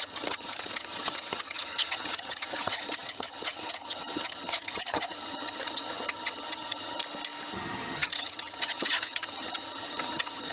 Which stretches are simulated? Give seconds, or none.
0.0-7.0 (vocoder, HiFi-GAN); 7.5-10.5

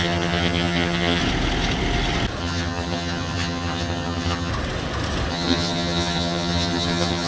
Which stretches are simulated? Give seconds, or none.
0.0-1.2 (vocoder, HiFi-GAN); 2.4-4.5; 5.3-7.3

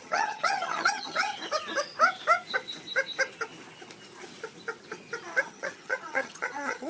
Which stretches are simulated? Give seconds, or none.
0.0-1.3 (vocoder, HiFi-GAN); 5.4-6.9

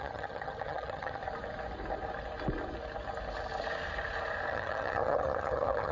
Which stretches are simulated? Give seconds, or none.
0.0-1.2 (vocoder, HiFi-GAN); 4.5-5.9

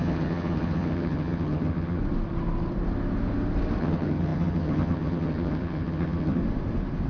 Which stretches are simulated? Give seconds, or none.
0.0-2.0 (vocoder, HiFi-GAN); 3.8-6.4

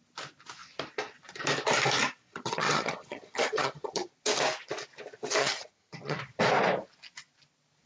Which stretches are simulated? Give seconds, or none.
2.3-4.1 (vocoder, HiFi-GAN); 5.4-6.2

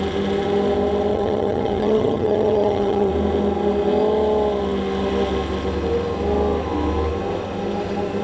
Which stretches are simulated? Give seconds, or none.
1.1-3.1 (vocoder, HiFi-GAN)